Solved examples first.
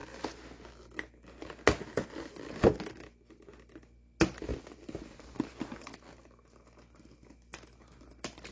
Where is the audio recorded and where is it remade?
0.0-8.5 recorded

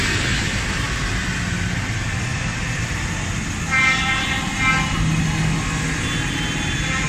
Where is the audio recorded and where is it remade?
0.0-7.1 recorded

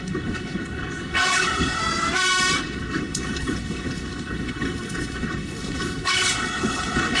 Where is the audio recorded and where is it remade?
0.0-1.8 remade; 1.8-2.6 recorded; 2.6-7.2 remade

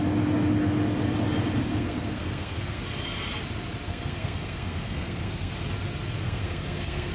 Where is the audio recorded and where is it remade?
0.0-1.7 recorded; 1.7-2.8 remade; 2.8-3.9 recorded; 3.9-5.5 remade; 5.5-6.2 recorded; 6.2-7.1 remade

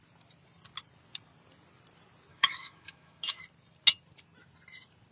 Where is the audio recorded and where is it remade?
0.0-2.3 recorded; 2.3-3.4 remade; 3.4-5.1 recorded

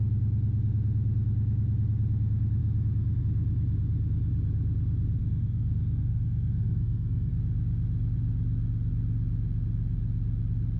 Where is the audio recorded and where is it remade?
0.0-5.2 recorded; 5.2-7.3 remade; 7.3-10.8 recorded

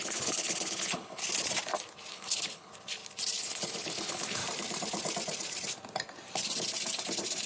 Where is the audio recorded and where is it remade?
0.0-1.2 remade; 1.2-2.1 recorded; 2.1-2.7 remade; 2.7-3.4 recorded; 3.4-4.4 remade; 4.4-7.5 recorded

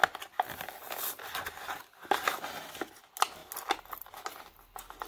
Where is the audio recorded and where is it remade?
0.0-5.1 recorded